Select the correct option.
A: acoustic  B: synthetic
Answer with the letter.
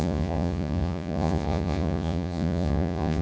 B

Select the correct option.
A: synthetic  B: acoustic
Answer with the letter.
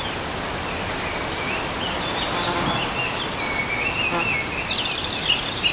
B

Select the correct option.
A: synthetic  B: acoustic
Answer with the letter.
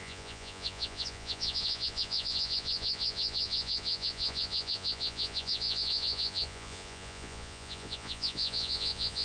A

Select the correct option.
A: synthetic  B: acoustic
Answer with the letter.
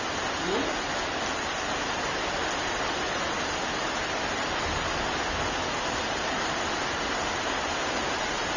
B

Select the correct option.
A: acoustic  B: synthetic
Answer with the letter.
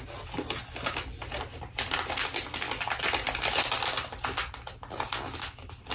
A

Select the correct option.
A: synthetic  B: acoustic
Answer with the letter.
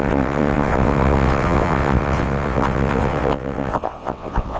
A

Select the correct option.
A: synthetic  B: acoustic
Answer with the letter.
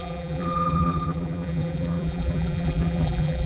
A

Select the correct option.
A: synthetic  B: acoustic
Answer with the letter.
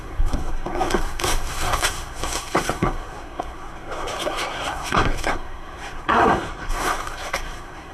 A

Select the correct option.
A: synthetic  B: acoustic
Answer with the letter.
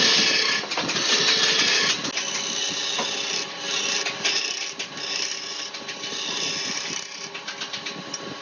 B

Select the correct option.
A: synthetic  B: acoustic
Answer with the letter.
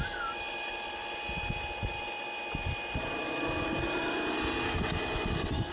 B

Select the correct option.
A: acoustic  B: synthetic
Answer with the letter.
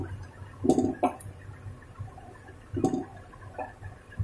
A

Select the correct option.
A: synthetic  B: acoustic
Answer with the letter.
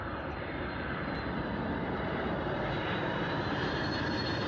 A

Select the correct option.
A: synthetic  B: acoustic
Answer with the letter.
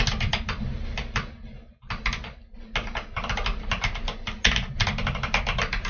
B